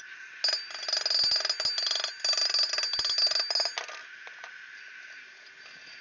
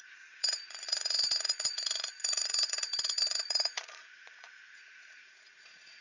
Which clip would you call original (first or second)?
first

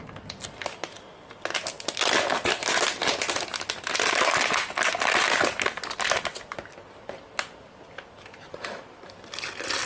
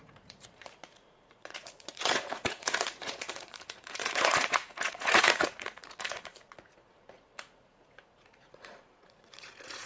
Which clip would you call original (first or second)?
first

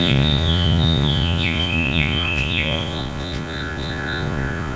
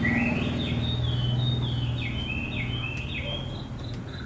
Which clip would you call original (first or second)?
second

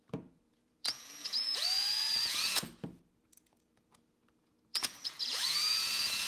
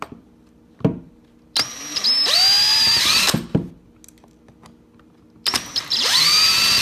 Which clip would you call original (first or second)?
second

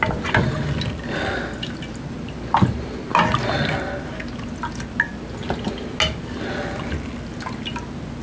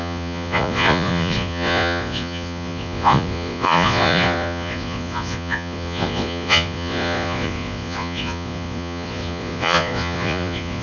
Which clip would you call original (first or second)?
first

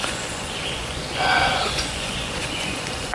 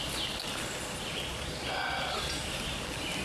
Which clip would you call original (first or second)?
second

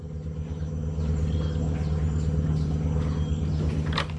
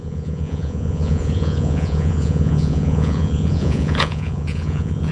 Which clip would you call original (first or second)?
first